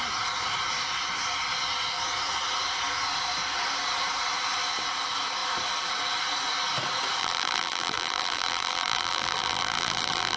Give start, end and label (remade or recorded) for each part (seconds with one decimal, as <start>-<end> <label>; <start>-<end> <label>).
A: 0.0-7.2 recorded; 7.2-10.4 remade